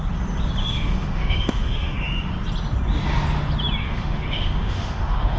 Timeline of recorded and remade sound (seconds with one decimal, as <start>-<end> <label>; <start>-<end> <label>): 0.0-0.6 recorded; 0.6-2.3 remade; 2.3-3.8 recorded; 3.8-5.4 remade